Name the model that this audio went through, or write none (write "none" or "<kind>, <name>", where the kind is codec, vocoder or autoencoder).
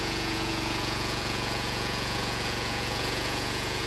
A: vocoder, Vocos